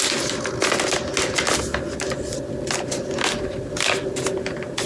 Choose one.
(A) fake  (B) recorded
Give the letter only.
B